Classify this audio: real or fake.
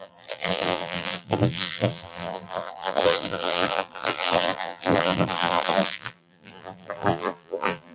fake